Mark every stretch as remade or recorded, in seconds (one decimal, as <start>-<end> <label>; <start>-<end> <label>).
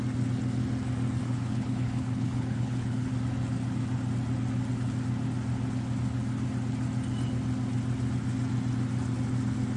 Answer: 0.0-1.2 recorded; 1.2-3.1 remade; 3.1-9.8 recorded